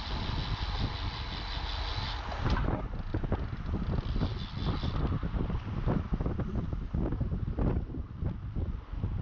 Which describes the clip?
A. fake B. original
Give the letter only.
B